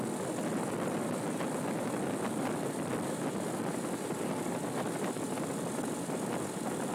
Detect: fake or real real